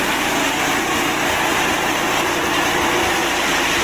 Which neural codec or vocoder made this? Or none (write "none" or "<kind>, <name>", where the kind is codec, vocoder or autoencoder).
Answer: none